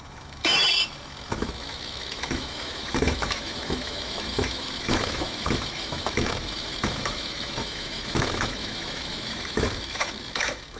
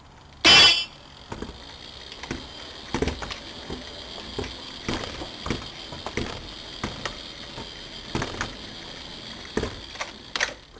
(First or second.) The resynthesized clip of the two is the first